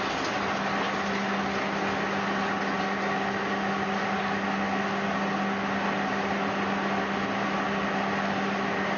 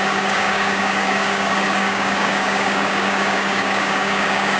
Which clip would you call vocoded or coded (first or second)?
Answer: second